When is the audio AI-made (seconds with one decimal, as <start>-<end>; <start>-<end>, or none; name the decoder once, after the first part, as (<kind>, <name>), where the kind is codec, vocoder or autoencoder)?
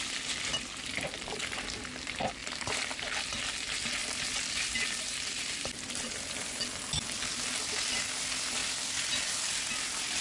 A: 2.4-3.0 (vocoder, BigVGAN v2); 4.0-6.8; 8.6-10.2